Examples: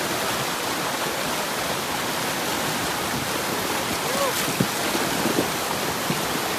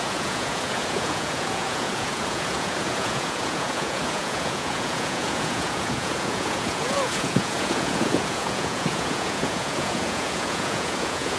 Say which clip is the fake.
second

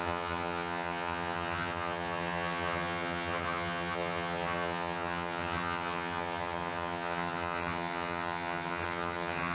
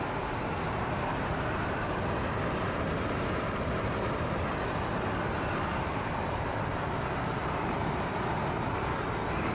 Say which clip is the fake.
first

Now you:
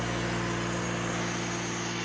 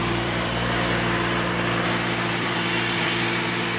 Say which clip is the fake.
second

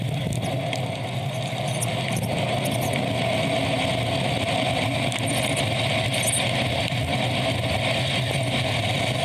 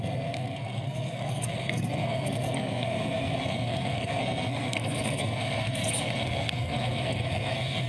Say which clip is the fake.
second